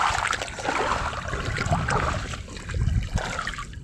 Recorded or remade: recorded